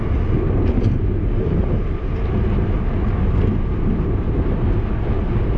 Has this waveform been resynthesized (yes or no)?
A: no